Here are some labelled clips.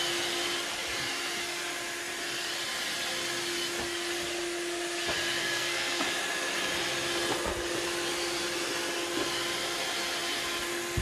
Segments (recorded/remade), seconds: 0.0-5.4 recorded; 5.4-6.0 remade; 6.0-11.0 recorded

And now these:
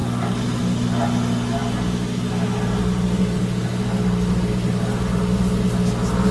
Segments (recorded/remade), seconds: 0.0-6.3 recorded

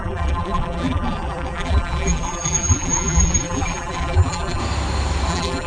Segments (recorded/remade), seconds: 0.0-4.6 remade; 4.6-5.3 recorded; 5.3-5.7 remade